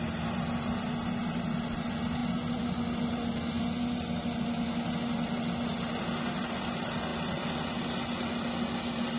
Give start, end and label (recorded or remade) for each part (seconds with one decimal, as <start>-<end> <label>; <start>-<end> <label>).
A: 0.0-9.2 recorded